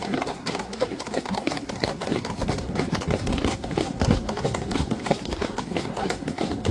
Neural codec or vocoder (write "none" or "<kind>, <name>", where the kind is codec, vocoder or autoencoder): codec, SNAC